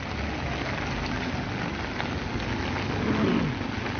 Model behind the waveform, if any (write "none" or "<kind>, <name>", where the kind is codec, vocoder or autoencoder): none